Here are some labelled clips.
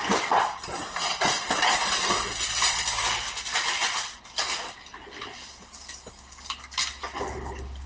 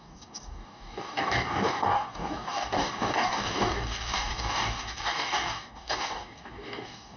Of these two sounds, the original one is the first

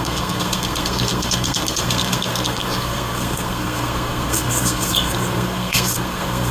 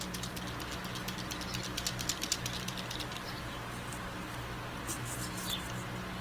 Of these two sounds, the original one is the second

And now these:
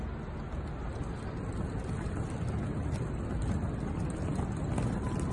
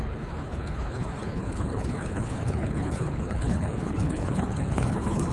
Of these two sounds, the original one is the first